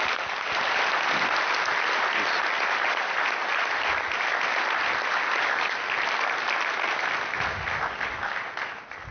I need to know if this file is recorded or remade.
recorded